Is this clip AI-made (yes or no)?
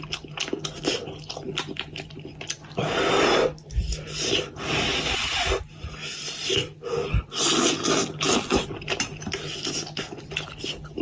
no